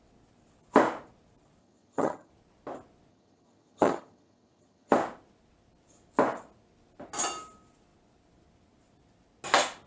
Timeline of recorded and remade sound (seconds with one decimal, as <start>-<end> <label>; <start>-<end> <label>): 0.0-1.6 recorded; 1.6-2.3 remade; 2.3-3.1 recorded; 3.1-4.9 remade; 4.9-9.9 recorded